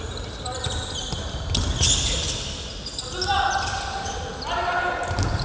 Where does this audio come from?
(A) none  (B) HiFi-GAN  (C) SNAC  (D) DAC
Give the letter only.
A